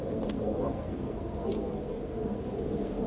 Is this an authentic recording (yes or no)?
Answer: no